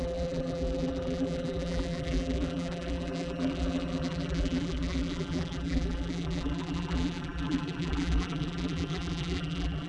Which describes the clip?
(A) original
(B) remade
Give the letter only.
B